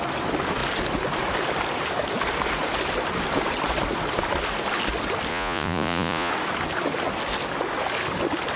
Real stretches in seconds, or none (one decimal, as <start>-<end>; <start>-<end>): 0.0-5.3; 6.3-8.6